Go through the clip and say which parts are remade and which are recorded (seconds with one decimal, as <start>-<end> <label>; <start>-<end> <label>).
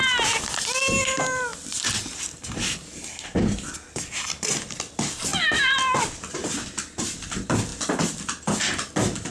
0.0-9.3 recorded